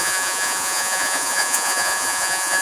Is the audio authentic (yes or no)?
no